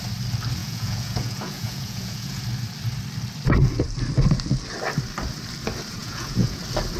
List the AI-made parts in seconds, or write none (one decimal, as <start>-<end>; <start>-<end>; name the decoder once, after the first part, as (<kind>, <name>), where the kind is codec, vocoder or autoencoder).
0.6-2.4 (vocoder, Vocos); 6.0-6.6